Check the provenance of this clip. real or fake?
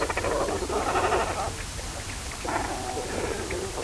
real